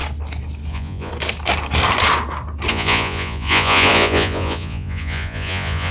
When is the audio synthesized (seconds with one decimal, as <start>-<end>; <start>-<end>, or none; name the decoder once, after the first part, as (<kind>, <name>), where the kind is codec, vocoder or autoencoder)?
0.7-1.1 (vocoder, Vocos); 2.7-5.9